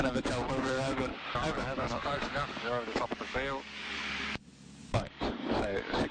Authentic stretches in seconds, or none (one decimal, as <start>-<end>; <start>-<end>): 1.1-1.6